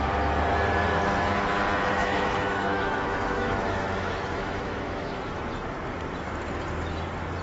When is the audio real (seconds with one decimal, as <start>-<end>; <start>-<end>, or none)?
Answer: 0.0-2.0; 5.5-7.4